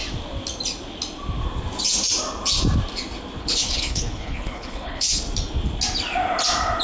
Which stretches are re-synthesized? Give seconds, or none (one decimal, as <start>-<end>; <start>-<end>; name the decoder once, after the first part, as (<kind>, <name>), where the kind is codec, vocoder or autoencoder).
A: 3.4-5.2 (codec, HILCodec)